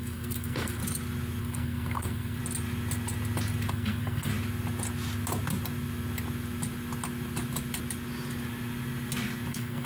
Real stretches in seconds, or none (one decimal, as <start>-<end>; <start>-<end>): 0.8-1.4; 2.4-3.7; 4.3-9.5